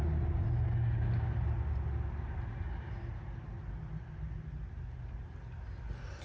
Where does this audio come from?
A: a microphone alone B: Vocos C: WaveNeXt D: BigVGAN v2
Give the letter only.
A